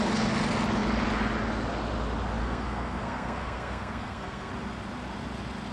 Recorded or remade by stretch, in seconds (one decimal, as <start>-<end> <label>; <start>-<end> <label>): 0.0-2.4 recorded; 2.4-4.5 remade; 4.5-5.7 recorded

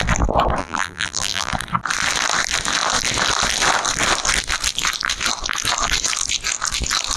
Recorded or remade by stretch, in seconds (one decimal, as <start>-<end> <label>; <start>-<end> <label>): 0.0-0.6 recorded; 0.6-1.5 remade; 1.5-7.2 recorded

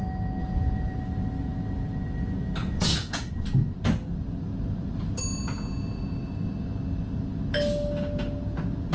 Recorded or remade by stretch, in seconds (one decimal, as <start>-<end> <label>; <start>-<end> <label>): 0.0-0.4 recorded; 0.4-1.0 remade; 1.0-2.6 recorded; 2.6-3.3 remade; 3.3-8.9 recorded

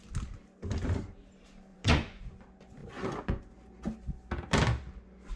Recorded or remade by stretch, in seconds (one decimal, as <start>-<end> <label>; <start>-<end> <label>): 0.0-1.7 recorded; 1.7-2.2 remade; 2.2-2.8 recorded; 2.8-3.4 remade; 3.4-5.4 recorded